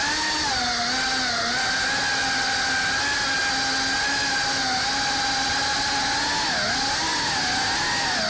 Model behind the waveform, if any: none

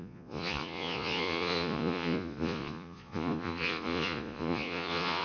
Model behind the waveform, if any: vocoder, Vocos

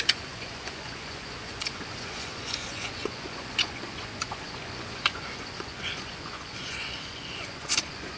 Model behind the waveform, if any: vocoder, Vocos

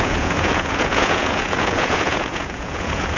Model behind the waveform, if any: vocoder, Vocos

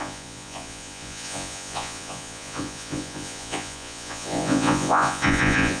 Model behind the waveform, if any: vocoder, Vocos